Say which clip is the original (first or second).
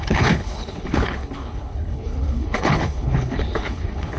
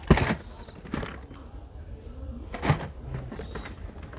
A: second